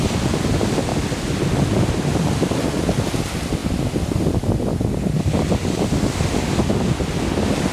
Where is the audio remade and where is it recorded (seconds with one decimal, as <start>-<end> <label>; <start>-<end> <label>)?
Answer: 0.0-7.7 recorded